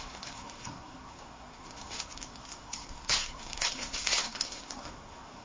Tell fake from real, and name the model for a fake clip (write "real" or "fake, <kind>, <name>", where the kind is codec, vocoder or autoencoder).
fake, codec, SNAC